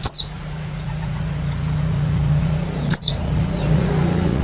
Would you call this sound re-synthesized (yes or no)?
yes